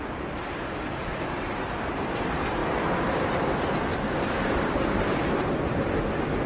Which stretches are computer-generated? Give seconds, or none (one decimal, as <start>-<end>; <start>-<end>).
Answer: 1.1-1.7; 3.9-6.1